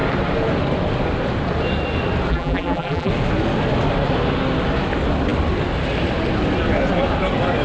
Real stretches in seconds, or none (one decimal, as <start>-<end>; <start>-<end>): 0.0-2.3; 3.1-7.6